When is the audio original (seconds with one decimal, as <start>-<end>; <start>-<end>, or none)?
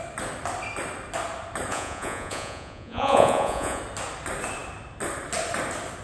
0.0-1.7; 3.8-6.0